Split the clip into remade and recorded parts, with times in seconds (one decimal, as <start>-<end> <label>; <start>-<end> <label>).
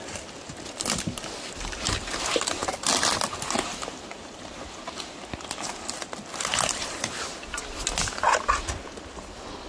0.0-9.7 recorded